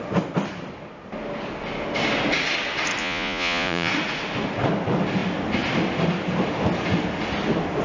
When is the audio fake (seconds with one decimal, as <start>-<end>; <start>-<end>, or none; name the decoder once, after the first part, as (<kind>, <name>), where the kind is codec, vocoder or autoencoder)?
3.0-3.9 (vocoder, Vocos)